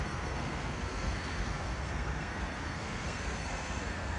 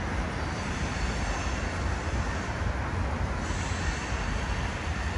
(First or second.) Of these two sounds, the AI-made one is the first